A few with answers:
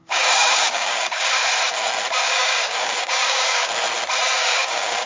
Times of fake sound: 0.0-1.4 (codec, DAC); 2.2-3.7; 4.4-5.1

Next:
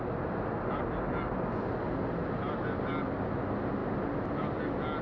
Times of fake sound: none

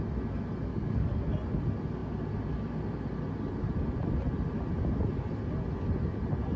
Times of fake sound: 0.7-1.2 (codec, DAC)

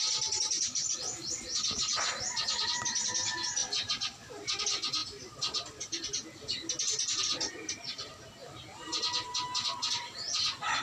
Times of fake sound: none

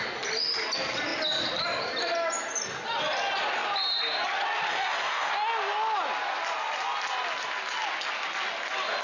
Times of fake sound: 4.7-5.3 (codec, DAC)

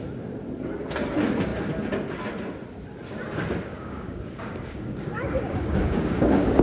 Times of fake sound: 3.7-6.6 (codec, DAC)